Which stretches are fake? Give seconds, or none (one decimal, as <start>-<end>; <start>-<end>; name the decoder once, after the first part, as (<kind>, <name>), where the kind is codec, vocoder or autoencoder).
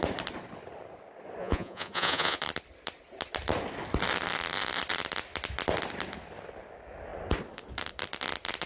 1.4-2.4 (vocoder, Vocos)